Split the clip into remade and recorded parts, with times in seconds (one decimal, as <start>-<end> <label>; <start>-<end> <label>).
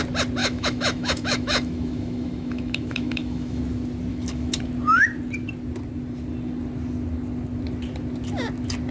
0.0-0.4 recorded; 0.4-3.6 remade; 3.6-4.1 recorded; 4.1-4.6 remade; 4.6-8.9 recorded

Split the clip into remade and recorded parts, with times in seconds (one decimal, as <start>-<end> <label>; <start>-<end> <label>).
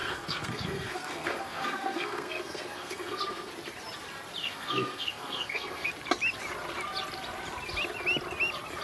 0.0-3.5 remade; 3.5-4.4 recorded; 4.4-5.9 remade; 5.9-8.8 recorded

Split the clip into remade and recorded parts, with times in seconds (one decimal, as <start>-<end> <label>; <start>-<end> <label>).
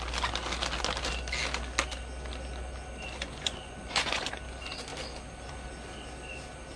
0.0-3.2 recorded; 3.2-4.3 remade; 4.3-6.8 recorded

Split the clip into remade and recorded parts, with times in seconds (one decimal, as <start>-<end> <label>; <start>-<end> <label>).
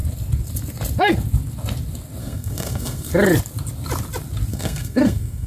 0.0-2.2 recorded; 2.2-3.1 remade; 3.1-4.5 recorded; 4.5-5.5 remade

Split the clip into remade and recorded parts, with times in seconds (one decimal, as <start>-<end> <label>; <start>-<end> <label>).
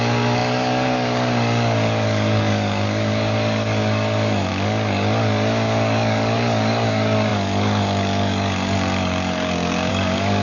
0.0-10.4 remade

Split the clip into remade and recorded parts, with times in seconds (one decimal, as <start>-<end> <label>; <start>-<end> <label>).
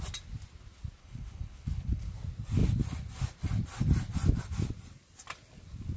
0.0-1.0 recorded; 1.0-2.1 remade; 2.1-6.0 recorded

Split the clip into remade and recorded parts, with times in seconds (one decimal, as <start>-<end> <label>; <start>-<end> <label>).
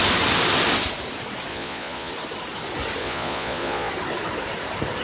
0.0-1.5 recorded; 1.5-2.1 remade; 2.1-3.0 recorded; 3.0-3.9 remade; 3.9-5.0 recorded